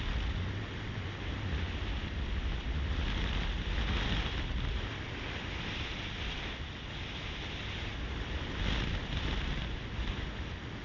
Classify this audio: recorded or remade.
recorded